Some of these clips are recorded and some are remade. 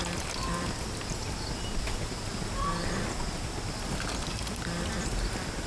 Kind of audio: recorded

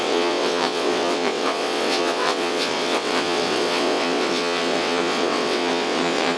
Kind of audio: remade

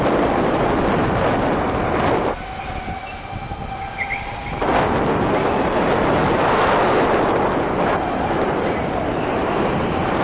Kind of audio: recorded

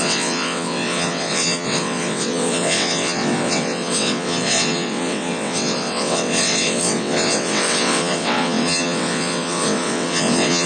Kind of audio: remade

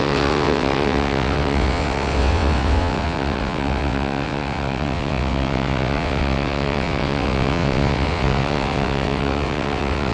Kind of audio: remade